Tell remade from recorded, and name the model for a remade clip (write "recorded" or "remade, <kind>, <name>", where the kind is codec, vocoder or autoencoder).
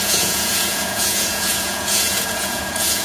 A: remade, vocoder, Vocos